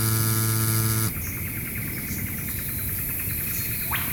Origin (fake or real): real